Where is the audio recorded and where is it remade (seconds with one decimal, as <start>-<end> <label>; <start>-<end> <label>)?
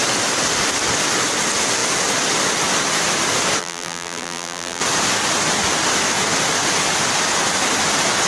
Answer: 0.0-3.6 recorded; 3.6-4.8 remade; 4.8-8.3 recorded